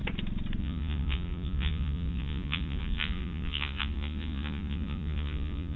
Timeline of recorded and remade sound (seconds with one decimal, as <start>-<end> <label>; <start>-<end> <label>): 0.0-0.6 recorded; 0.6-5.8 remade